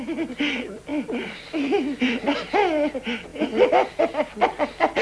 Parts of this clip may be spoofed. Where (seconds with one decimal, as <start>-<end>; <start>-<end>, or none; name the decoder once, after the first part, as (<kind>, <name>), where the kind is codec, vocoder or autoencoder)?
none